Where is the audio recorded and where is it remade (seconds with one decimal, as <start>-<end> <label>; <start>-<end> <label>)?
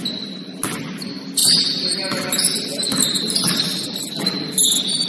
0.0-5.1 recorded